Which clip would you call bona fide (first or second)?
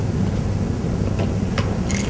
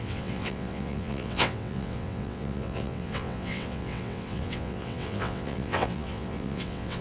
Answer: first